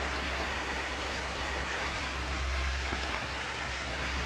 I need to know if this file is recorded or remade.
remade